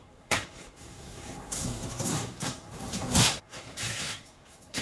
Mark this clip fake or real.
fake